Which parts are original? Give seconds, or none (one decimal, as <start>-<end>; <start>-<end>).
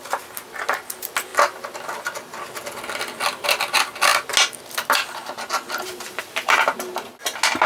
0.0-7.7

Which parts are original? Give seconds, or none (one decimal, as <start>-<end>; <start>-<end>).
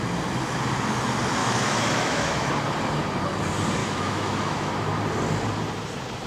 0.0-1.4; 2.5-3.8; 4.7-6.3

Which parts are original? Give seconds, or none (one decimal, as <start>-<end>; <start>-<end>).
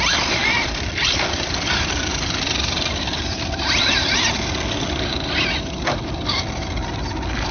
0.0-0.4; 4.0-7.5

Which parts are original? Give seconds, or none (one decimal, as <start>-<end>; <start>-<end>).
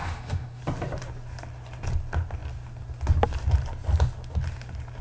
0.6-5.0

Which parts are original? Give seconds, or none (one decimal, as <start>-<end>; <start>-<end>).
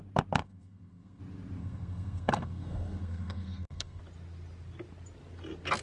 0.0-0.4; 1.2-1.6; 4.0-5.8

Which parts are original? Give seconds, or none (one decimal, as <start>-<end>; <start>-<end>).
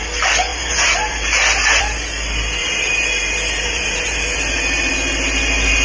0.0-0.5; 1.8-2.6; 4.9-5.8